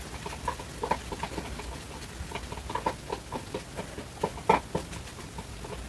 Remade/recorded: recorded